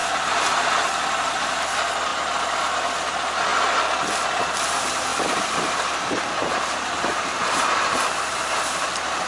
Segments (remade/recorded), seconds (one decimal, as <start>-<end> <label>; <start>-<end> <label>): 0.0-0.9 remade; 0.9-5.1 recorded; 5.1-8.9 remade; 8.9-9.3 recorded